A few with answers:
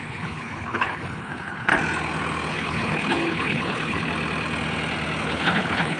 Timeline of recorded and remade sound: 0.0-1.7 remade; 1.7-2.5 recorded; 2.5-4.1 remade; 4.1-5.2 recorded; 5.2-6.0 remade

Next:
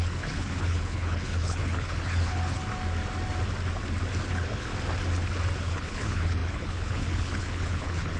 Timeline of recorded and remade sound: 0.0-2.6 remade; 2.6-4.3 recorded; 4.3-4.7 remade; 4.7-5.6 recorded; 5.6-8.2 remade

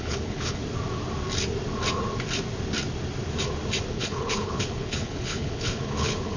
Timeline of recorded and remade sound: 0.0-0.6 remade; 0.6-3.9 recorded; 3.9-6.4 remade

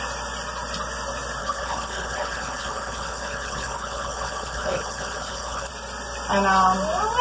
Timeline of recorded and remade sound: 0.0-1.4 recorded; 1.4-5.7 remade; 5.7-7.2 recorded

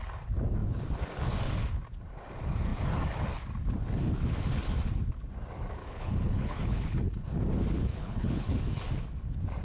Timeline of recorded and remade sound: 0.0-5.8 recorded; 5.8-7.4 remade; 7.4-7.9 recorded; 7.9-8.8 remade; 8.8-9.6 recorded